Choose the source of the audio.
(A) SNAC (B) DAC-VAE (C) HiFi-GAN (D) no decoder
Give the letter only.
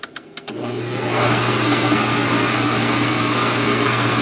A